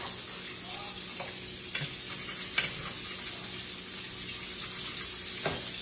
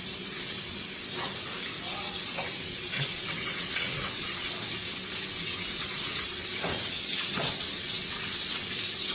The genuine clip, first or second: first